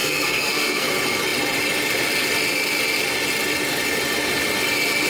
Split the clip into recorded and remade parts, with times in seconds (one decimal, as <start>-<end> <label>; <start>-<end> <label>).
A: 0.0-0.9 remade; 0.9-5.1 recorded